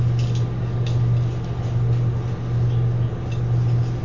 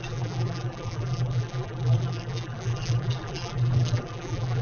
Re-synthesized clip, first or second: second